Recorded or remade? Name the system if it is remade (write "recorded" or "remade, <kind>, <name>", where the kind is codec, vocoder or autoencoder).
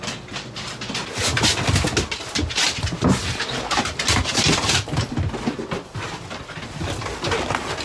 recorded